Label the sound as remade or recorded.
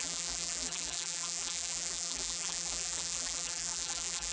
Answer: remade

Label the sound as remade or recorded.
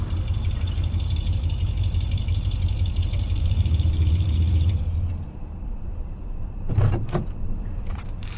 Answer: remade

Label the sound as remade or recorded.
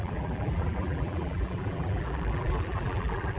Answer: remade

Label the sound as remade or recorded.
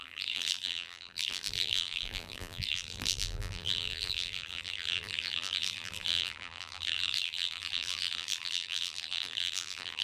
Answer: remade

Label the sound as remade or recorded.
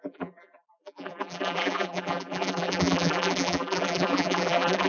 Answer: remade